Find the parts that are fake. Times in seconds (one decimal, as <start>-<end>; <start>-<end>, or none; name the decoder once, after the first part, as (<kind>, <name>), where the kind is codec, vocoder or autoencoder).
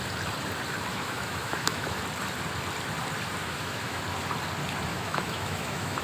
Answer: 0.9-2.0 (autoencoder, DAC-VAE); 3.4-4.0; 4.9-6.0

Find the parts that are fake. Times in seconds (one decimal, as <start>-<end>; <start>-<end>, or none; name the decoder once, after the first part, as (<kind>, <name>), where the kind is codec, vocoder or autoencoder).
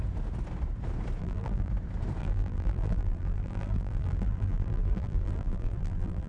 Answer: 1.2-1.7 (vocoder, BigVGAN v2); 2.2-6.3